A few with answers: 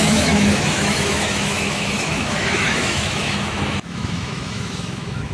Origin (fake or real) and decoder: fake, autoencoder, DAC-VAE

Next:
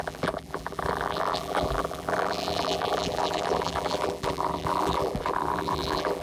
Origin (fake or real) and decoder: fake, vocoder, BigVGAN v2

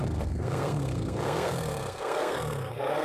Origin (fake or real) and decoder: fake, codec, SNAC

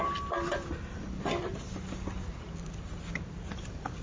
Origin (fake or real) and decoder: fake, vocoder, BigVGAN v2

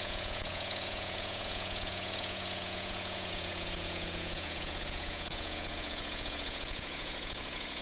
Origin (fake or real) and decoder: fake, vocoder, Vocos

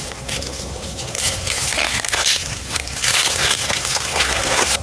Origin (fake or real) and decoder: fake, codec, SNAC